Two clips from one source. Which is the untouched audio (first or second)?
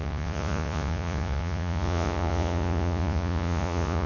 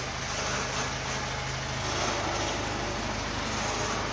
second